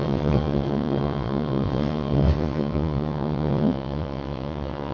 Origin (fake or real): fake